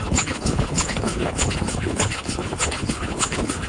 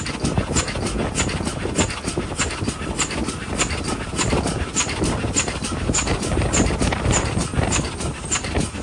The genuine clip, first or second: second